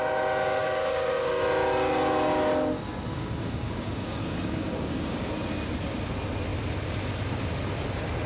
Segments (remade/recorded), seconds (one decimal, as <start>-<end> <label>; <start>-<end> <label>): 0.0-0.6 recorded; 0.6-1.4 remade; 1.4-3.1 recorded; 3.1-5.3 remade; 5.3-8.3 recorded